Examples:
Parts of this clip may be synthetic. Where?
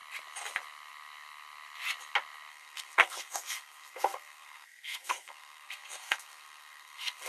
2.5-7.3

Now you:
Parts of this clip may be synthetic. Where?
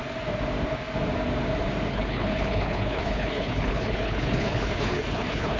1.9-5.6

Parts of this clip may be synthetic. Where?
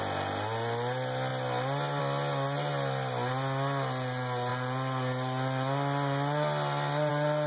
none